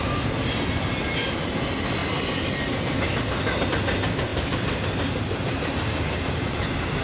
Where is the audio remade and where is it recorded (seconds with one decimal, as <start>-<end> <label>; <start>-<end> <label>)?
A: 0.0-4.3 recorded; 4.3-7.0 remade